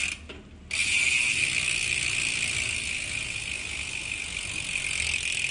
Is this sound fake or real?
real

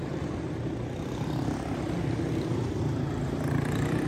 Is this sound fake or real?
real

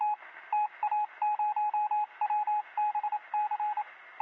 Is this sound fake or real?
real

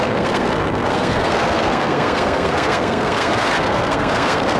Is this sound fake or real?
fake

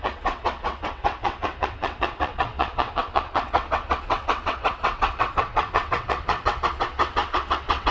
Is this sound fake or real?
fake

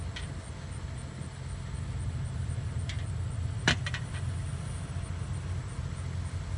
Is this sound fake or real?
real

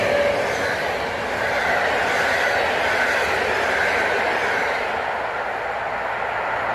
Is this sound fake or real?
real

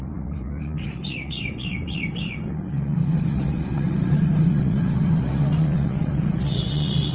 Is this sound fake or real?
fake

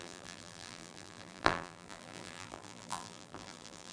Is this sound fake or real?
fake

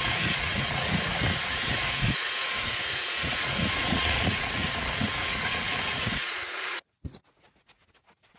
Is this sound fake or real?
fake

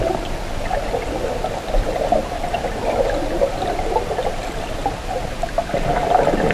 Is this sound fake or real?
real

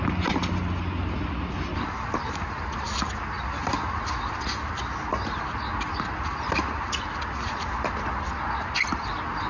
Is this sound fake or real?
real